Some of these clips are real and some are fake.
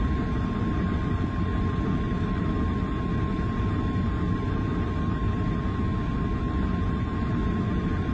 fake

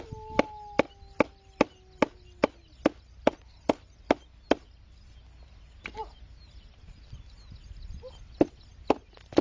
real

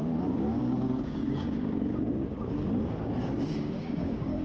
fake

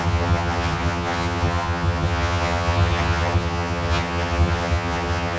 fake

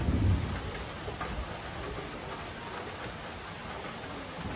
real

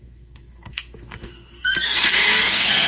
fake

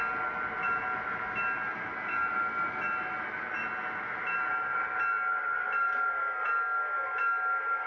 real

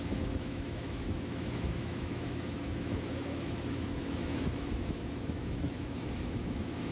fake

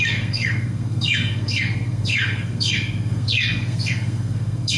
fake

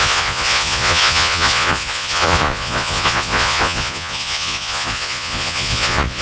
fake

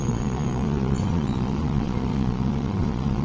fake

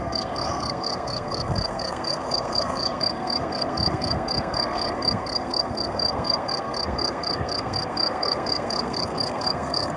fake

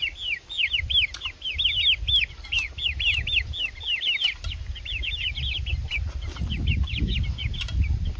real